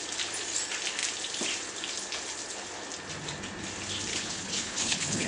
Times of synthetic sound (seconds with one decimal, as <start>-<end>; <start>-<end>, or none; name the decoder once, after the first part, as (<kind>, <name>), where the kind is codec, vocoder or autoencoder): 4.1-5.3 (codec, HILCodec)